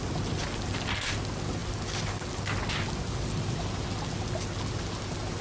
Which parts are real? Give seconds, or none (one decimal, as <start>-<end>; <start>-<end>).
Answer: 0.0-5.4